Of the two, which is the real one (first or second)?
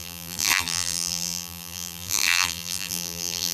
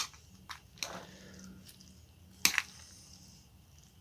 second